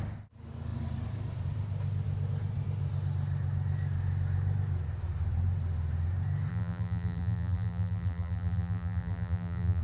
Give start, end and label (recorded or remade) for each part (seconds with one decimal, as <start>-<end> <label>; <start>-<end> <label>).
0.0-6.5 recorded; 6.5-9.8 remade